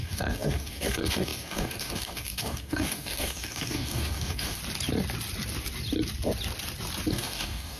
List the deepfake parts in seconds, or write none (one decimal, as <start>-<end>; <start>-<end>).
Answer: 0.0-4.6; 7.1-7.8